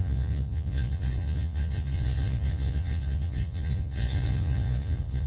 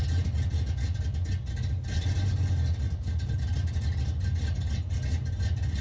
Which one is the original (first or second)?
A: second